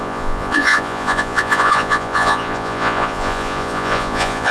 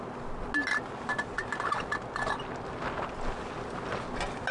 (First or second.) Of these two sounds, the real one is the second